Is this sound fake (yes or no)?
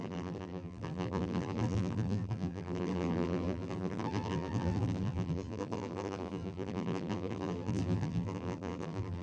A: yes